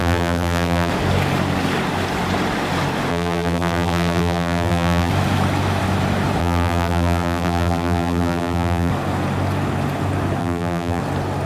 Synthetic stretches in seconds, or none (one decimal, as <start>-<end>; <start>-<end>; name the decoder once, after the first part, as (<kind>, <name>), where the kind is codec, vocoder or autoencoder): 0.0-0.9 (vocoder, BigVGAN v2); 3.1-5.1; 6.4-8.9; 10.4-11.0